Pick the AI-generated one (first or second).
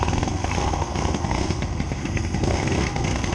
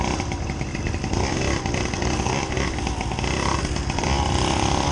first